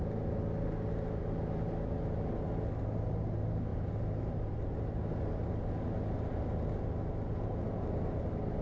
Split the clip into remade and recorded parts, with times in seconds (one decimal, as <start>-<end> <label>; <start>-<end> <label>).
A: 0.0-8.6 recorded